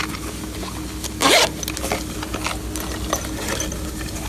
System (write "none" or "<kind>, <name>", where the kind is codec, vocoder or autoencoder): none